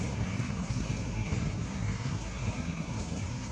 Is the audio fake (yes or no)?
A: yes